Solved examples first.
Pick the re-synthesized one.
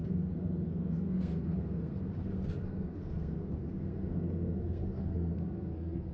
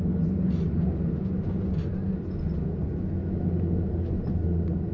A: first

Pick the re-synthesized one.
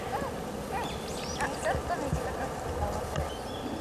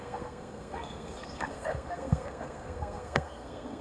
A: second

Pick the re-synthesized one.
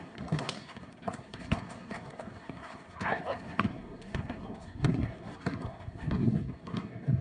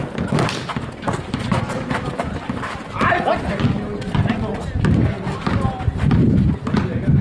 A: first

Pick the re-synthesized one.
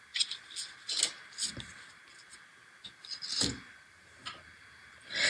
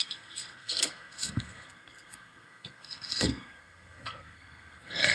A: second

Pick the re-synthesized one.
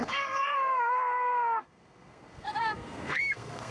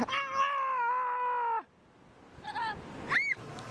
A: first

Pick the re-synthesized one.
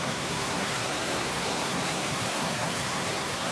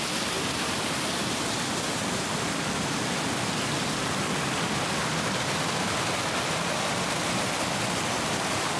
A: first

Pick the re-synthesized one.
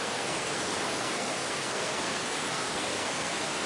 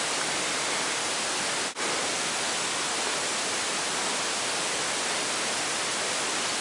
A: first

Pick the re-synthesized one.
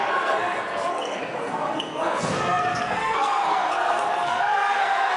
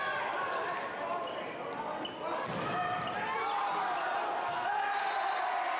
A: first